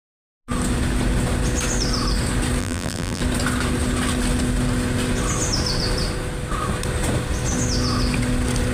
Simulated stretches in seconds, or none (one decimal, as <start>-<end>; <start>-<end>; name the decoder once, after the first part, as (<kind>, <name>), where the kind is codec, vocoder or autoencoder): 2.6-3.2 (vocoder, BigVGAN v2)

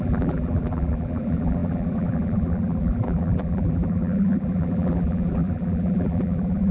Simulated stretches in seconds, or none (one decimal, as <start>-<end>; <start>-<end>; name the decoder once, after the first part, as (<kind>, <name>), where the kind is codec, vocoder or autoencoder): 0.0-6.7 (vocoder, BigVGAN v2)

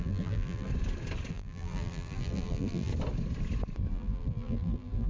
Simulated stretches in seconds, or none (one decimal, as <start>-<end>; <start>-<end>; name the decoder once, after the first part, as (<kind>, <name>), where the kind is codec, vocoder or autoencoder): 0.0-0.7 (vocoder, BigVGAN v2); 1.3-2.9; 3.9-5.1

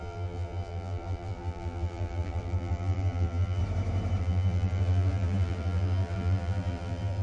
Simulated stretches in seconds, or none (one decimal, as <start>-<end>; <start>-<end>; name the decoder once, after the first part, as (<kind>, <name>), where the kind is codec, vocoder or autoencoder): 0.0-3.6 (vocoder, BigVGAN v2); 4.2-7.2

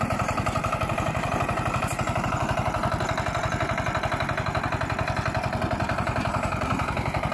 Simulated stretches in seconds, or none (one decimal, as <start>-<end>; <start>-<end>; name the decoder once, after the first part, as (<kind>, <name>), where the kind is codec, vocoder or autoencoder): 0.0-2.8 (vocoder, BigVGAN v2); 6.0-7.3

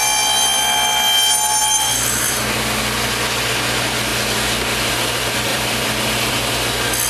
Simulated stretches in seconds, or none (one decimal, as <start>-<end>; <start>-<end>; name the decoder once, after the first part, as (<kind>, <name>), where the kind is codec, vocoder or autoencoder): 1.6-2.8 (vocoder, BigVGAN v2); 5.5-6.3

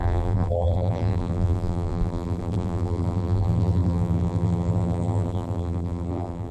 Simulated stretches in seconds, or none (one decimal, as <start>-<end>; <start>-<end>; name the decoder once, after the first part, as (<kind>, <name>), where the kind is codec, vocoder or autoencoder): 0.0-6.5 (vocoder, BigVGAN v2)